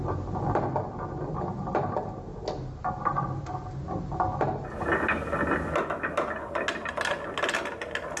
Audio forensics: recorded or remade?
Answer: recorded